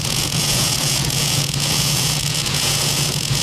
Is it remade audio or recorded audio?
remade